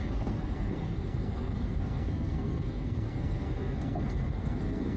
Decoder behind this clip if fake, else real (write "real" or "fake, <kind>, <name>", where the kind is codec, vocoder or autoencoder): fake, codec, SNAC